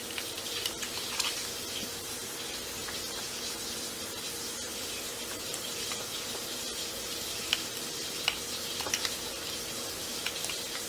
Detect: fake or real real